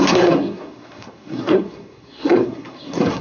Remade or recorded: remade